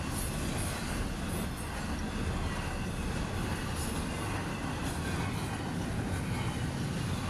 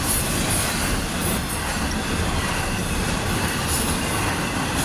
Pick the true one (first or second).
first